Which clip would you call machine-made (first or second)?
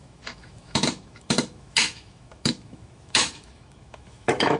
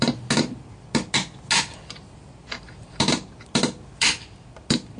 first